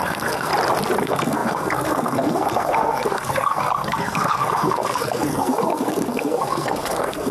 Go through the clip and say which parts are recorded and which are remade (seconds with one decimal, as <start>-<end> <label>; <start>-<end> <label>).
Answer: 0.0-0.5 remade; 0.5-1.0 recorded; 1.0-7.3 remade